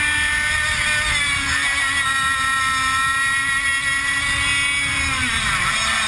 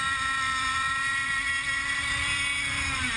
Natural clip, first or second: first